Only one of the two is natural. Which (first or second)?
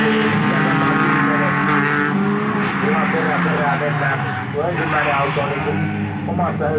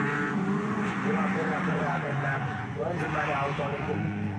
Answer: first